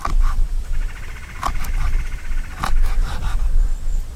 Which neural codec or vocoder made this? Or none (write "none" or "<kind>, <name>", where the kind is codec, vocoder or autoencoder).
none